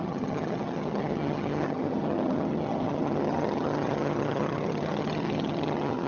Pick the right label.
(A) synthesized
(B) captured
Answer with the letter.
A